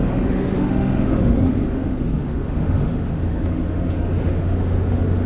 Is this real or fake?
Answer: fake